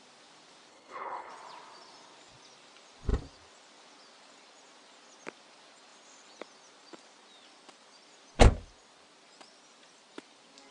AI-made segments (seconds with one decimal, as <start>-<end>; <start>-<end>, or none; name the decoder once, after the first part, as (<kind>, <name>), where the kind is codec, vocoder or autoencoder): 0.7-1.3 (codec, HILCodec)

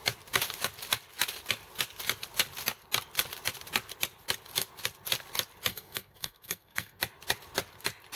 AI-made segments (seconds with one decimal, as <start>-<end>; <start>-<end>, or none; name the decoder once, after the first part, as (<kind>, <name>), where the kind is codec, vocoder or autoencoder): 5.7-7.0 (codec, SNAC)

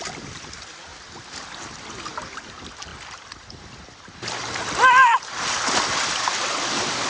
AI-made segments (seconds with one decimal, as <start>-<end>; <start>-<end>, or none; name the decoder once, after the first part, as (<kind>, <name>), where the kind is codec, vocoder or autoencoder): 0.0-0.9 (vocoder, BigVGAN v2); 1.6-7.1

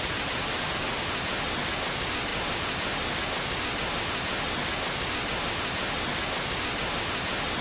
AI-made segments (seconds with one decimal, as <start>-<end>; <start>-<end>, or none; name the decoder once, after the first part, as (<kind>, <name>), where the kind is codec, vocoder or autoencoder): none

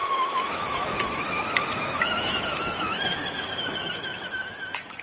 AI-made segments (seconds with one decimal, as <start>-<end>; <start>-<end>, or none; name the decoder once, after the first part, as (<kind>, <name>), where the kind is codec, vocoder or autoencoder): 0.0-5.0 (autoencoder, DAC-VAE)

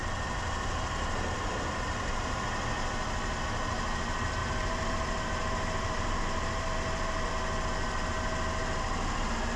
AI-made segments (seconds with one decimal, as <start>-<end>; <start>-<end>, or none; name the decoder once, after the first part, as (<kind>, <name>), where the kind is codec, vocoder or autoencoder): 0.0-2.6 (vocoder, BigVGAN v2); 4.4-7.3

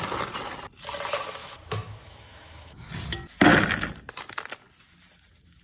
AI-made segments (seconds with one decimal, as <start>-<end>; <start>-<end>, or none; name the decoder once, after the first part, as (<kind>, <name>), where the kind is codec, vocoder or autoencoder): 1.4-2.9 (autoencoder, DAC-VAE)

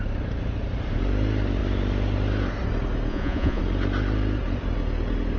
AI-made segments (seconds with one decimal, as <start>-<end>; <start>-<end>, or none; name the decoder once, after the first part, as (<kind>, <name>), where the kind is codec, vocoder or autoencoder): 3.1-3.6 (vocoder, Vocos)